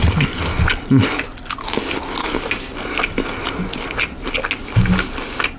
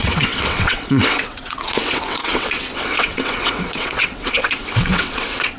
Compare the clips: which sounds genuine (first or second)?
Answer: first